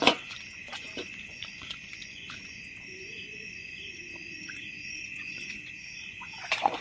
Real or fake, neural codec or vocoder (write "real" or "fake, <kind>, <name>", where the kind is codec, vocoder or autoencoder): fake, vocoder, Vocos